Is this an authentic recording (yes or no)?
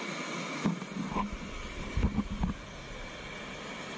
yes